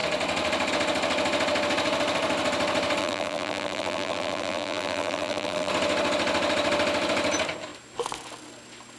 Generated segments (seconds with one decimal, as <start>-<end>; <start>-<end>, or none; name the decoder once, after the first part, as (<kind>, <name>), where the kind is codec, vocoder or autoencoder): 3.0-5.7 (vocoder, BigVGAN v2)